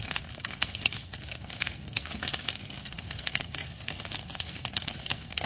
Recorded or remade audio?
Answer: remade